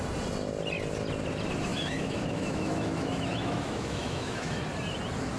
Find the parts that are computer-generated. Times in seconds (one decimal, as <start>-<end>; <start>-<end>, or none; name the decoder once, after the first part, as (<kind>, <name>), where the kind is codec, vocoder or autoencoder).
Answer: 1.7-4.6 (autoencoder, DAC-VAE)